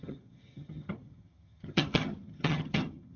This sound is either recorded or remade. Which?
remade